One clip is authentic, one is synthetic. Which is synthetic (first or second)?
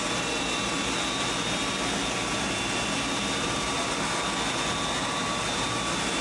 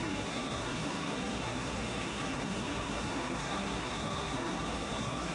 second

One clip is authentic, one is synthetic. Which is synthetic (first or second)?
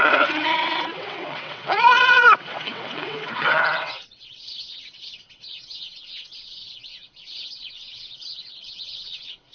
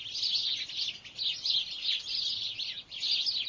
first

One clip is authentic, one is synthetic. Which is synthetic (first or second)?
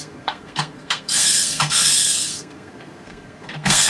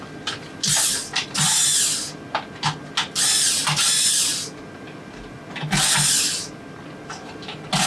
first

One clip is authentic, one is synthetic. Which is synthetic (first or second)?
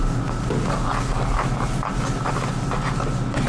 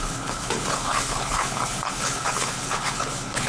second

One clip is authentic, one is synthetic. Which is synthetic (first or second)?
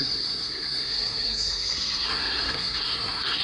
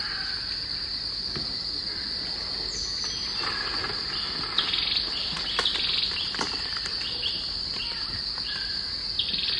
first